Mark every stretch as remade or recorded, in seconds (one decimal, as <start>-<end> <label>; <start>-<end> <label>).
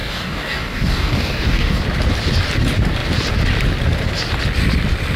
0.0-1.8 remade; 1.8-5.2 recorded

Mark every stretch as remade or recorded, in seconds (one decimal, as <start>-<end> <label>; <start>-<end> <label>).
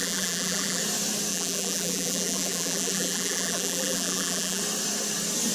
0.0-0.8 remade; 0.8-1.3 recorded; 1.3-4.6 remade; 4.6-5.5 recorded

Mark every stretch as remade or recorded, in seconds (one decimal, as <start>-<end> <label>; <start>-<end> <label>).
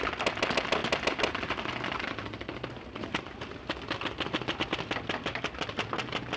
0.0-6.4 recorded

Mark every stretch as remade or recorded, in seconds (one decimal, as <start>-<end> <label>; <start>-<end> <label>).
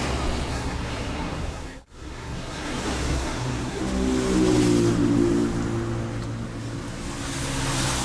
0.0-0.5 recorded; 0.5-3.8 remade; 3.8-8.0 recorded